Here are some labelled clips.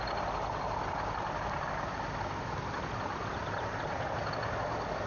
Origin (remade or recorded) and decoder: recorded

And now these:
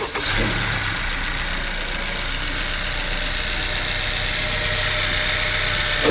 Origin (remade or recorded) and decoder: recorded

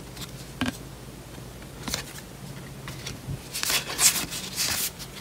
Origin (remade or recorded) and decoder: recorded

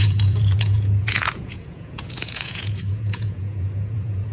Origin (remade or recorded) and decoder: remade, vocoder, Vocos